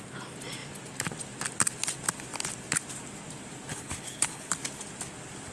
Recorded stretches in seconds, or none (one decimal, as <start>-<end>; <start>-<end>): 0.0-3.7; 4.5-5.5